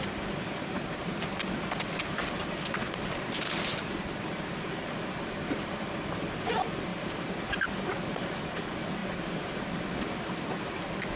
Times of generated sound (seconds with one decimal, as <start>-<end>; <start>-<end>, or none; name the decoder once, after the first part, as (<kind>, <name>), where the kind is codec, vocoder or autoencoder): 2.8-5.8 (vocoder, BigVGAN v2); 6.9-8.5; 9.0-9.6